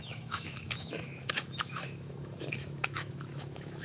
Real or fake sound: fake